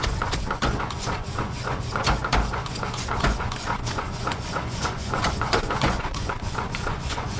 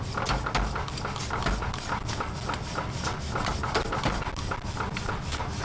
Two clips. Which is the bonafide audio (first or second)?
second